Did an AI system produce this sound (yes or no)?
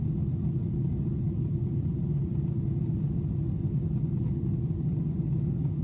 no